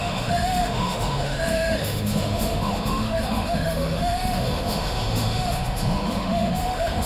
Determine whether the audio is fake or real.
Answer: fake